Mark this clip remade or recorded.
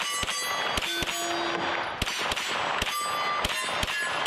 recorded